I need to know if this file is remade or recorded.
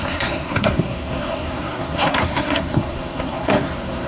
remade